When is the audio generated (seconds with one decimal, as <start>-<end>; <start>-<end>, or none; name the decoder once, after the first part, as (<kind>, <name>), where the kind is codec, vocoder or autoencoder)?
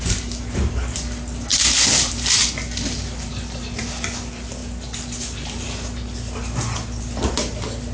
none